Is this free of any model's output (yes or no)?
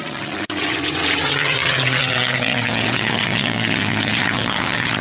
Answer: no